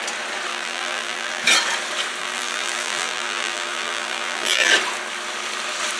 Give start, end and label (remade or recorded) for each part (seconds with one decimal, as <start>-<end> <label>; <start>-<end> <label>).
0.0-0.5 recorded; 0.5-1.4 remade; 1.4-2.2 recorded; 2.2-4.7 remade; 4.7-6.0 recorded